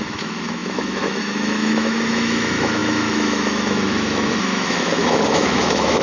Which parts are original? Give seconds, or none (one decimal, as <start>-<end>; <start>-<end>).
none